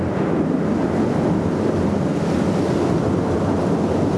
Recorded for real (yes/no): yes